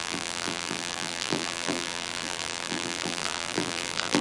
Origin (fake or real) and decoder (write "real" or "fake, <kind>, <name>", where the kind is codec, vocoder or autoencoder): fake, vocoder, BigVGAN v2